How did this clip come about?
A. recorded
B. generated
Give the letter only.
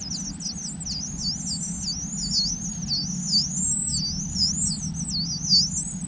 A